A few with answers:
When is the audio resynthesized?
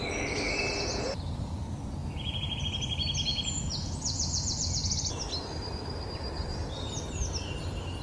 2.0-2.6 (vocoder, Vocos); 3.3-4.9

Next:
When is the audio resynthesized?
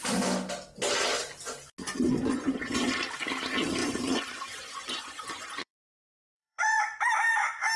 1.8-2.9 (vocoder, Vocos); 3.8-7.0